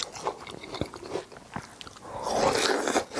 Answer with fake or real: real